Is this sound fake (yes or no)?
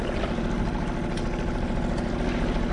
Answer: no